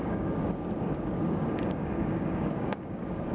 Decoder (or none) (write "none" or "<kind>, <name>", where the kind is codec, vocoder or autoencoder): codec, DAC